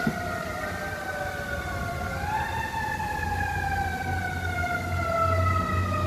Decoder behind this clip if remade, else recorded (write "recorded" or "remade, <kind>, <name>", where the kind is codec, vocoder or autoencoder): recorded